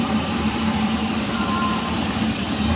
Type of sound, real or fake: fake